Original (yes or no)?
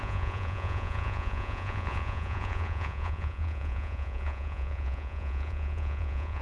no